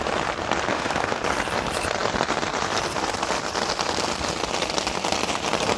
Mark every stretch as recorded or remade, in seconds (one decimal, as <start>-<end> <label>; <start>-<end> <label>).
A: 0.0-0.7 recorded; 0.7-1.2 remade; 1.2-5.8 recorded

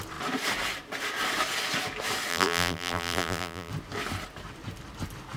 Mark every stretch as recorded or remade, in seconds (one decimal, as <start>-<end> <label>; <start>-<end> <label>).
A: 0.0-2.3 recorded; 2.3-3.7 remade; 3.7-5.4 recorded